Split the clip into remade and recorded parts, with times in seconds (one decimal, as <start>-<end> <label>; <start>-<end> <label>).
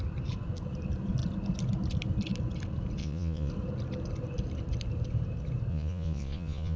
0.0-3.0 recorded; 3.0-3.5 remade; 3.5-5.7 recorded; 5.7-6.8 remade